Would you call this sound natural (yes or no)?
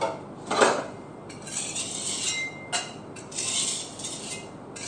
yes